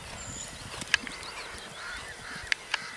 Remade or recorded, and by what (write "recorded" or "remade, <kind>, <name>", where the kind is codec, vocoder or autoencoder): recorded